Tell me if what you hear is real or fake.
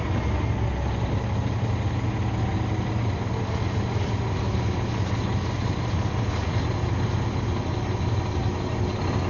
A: real